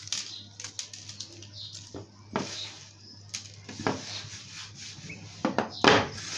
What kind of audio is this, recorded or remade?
recorded